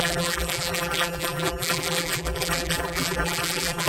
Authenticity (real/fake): fake